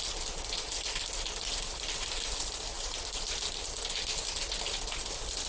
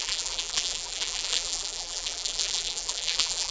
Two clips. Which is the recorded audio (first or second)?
first